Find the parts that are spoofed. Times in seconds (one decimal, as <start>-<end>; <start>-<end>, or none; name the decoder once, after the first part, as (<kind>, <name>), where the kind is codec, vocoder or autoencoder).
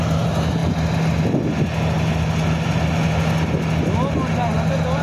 none